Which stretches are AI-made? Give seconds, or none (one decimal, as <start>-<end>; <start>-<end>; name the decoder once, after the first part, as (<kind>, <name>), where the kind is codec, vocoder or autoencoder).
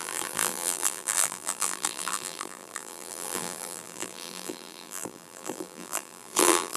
0.0-6.8 (vocoder, BigVGAN v2)